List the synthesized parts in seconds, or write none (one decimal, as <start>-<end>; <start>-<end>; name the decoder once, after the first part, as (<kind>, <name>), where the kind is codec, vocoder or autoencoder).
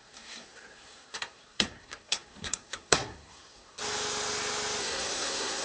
0.0-3.8 (codec, SNAC); 4.8-5.6